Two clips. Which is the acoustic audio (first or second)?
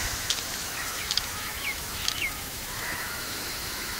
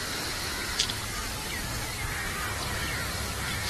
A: second